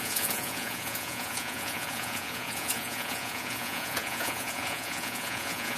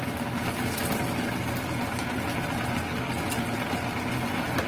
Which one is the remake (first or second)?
first